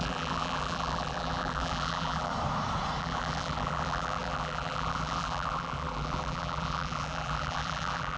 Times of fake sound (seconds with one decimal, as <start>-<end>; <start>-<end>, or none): 0.0-2.3; 3.0-8.2